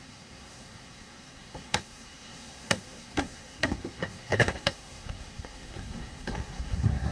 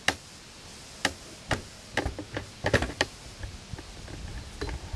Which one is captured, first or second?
second